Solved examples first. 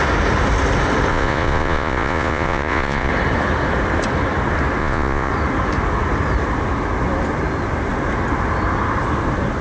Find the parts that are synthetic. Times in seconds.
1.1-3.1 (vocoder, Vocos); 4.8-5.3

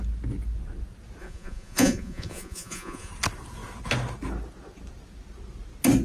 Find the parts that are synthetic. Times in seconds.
1.2-3.1 (vocoder, Vocos)

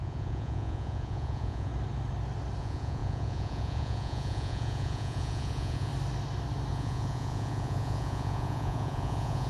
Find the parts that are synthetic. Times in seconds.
0.0-1.7 (vocoder, Vocos); 2.6-5.9; 6.7-9.5

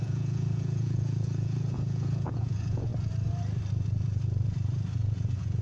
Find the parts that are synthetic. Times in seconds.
0.0-2.9 (vocoder, Vocos); 4.9-5.6

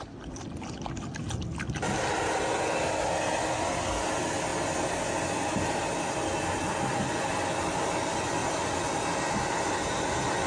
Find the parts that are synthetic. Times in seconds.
none

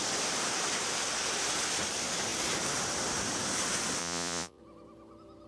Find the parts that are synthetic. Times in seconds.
4.0-4.6 (vocoder, Vocos)